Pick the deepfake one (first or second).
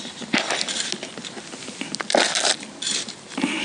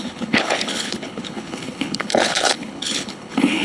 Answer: second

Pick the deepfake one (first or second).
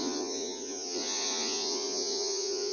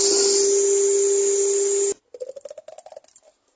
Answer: first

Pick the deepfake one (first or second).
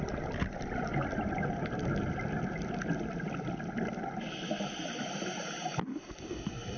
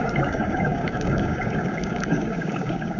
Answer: second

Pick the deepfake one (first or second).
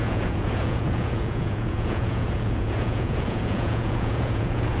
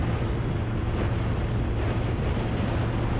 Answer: first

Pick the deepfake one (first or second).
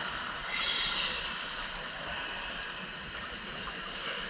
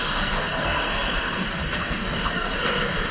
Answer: second